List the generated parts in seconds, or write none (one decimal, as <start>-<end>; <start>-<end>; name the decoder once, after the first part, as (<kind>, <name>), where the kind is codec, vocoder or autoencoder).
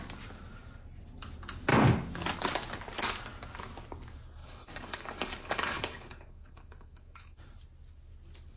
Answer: 4.4-7.4 (codec, DAC)